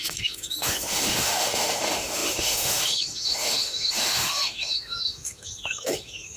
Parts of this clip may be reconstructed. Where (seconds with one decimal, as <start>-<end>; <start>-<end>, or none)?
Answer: 0.0-6.4